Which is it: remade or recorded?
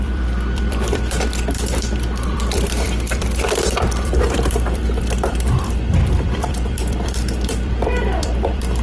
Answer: remade